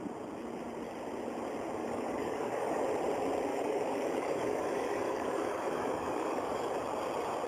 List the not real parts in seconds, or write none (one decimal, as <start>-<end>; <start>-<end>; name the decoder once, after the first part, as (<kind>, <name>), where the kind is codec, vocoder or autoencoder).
1.8-2.8 (codec, DAC); 3.5-6.7